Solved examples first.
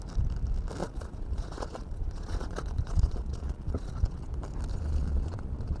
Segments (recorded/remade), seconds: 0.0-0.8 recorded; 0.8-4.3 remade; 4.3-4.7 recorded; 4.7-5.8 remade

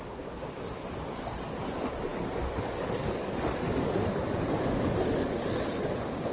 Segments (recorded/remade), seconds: 0.0-0.8 recorded; 0.8-1.6 remade; 1.6-2.1 recorded; 2.1-3.9 remade; 3.9-6.3 recorded

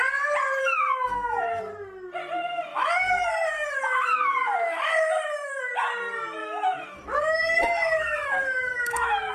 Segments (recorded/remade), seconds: 0.0-0.6 recorded; 0.6-1.6 remade; 1.6-2.7 recorded; 2.7-5.6 remade; 5.6-6.4 recorded; 6.4-9.3 remade

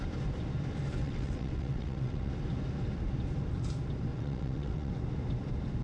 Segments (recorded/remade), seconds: 0.0-1.0 recorded; 1.0-2.3 remade; 2.3-4.1 recorded; 4.1-4.9 remade; 4.9-5.8 recorded